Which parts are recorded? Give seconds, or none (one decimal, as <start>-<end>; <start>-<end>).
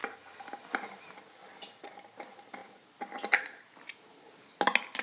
0.0-5.0